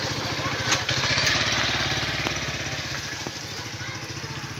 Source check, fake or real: real